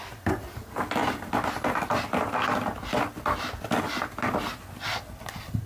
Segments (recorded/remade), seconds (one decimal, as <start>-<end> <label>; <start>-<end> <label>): 0.0-5.7 recorded